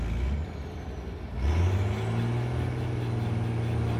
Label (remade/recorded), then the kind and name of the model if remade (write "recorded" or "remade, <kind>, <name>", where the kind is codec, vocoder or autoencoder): recorded